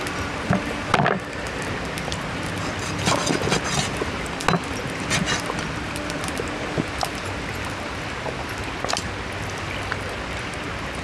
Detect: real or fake real